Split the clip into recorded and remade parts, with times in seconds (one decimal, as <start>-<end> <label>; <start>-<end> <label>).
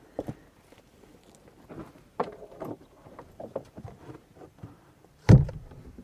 0.0-1.1 remade; 1.1-1.9 recorded; 1.9-6.0 remade